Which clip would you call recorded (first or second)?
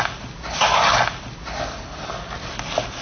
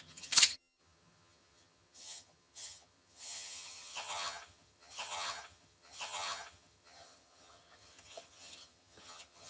first